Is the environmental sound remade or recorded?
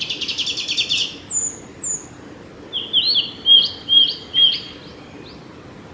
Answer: recorded